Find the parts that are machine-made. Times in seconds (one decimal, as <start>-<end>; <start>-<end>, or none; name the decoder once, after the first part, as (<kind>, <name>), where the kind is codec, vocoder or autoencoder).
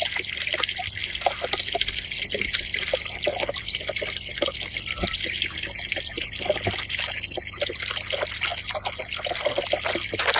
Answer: none